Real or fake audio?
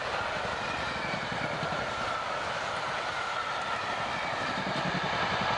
real